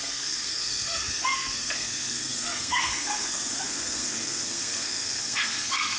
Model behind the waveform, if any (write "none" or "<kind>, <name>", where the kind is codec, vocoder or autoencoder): codec, SNAC